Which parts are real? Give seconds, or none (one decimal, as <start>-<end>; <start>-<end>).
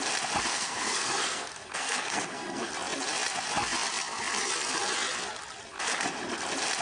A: 0.0-0.5; 2.7-6.8